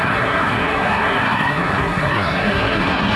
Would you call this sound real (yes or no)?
no